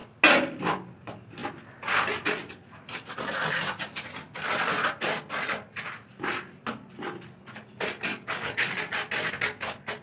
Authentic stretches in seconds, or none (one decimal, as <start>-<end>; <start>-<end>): 0.0-8.1; 8.8-10.0